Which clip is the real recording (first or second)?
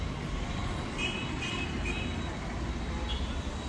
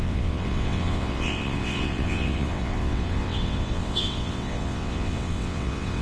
first